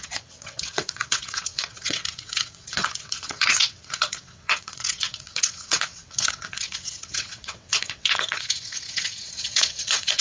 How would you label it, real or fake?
fake